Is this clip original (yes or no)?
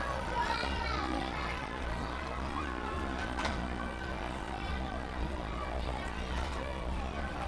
no